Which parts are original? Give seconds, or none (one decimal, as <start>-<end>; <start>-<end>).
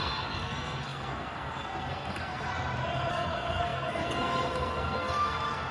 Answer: 2.5-3.1